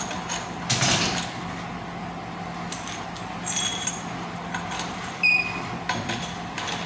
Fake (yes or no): no